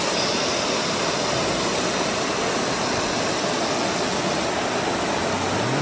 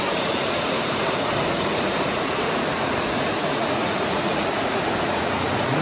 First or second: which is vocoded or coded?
second